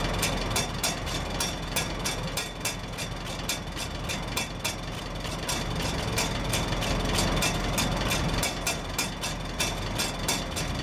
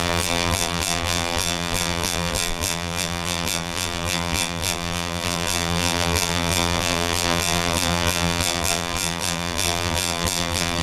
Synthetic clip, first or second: second